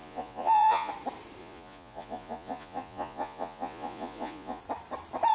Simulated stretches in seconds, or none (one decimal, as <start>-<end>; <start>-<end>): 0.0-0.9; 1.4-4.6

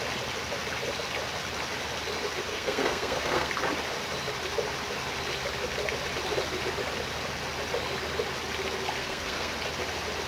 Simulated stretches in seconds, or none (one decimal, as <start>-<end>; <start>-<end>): 2.5-3.5; 9.0-9.5

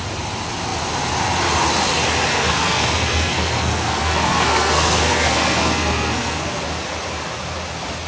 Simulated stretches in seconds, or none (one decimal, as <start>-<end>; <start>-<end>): 2.3-6.6

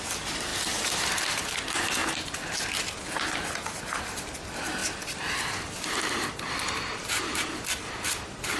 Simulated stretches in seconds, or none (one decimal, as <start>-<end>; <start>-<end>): 0.0-0.5; 1.2-2.0; 4.3-8.6